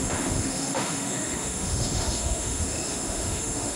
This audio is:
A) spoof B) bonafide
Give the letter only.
A